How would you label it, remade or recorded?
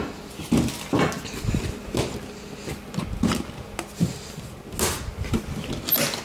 recorded